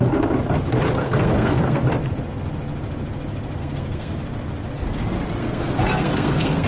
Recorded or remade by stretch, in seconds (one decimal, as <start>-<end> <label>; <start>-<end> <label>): 0.0-1.0 recorded; 1.0-1.8 remade; 1.8-3.6 recorded; 3.6-4.1 remade; 4.1-5.4 recorded; 5.4-6.7 remade